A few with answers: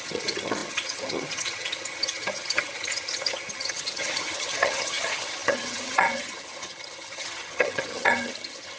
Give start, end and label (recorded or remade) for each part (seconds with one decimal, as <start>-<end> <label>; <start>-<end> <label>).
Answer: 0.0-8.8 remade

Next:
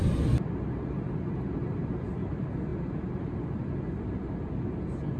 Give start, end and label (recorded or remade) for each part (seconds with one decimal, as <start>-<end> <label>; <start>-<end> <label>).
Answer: 0.0-5.2 recorded

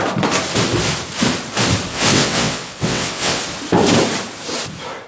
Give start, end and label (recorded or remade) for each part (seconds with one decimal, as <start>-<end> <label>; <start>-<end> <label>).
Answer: 0.0-1.9 recorded; 1.9-3.4 remade; 3.4-5.1 recorded

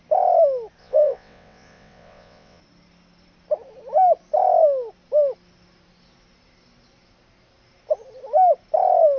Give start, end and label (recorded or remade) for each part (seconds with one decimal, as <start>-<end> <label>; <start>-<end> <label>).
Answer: 0.0-0.8 recorded; 0.8-2.6 remade; 2.6-9.2 recorded

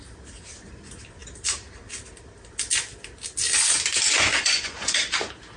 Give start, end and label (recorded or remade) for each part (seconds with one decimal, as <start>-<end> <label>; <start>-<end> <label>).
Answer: 0.0-4.1 recorded; 4.1-5.1 remade; 5.1-5.6 recorded

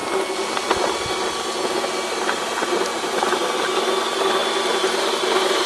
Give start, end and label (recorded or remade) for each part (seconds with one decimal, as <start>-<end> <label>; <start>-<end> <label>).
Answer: 0.0-2.9 recorded; 2.9-3.4 remade; 3.4-5.7 recorded